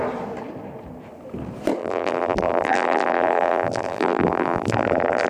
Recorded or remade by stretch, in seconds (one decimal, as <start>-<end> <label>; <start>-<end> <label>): 0.0-1.8 recorded; 1.8-5.3 remade